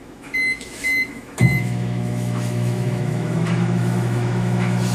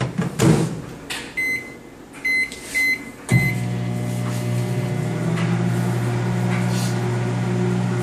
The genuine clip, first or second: second